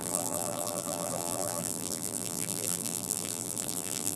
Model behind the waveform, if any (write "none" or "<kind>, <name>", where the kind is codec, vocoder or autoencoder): vocoder, BigVGAN v2